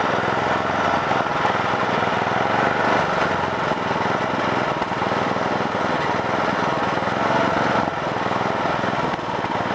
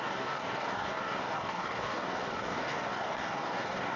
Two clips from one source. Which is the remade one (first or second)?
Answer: second